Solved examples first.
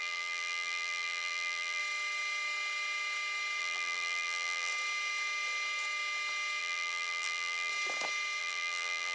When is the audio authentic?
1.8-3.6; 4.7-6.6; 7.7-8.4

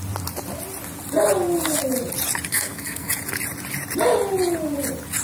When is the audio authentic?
0.0-2.5; 3.1-5.2